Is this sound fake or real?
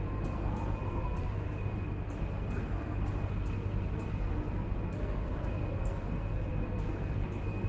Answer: fake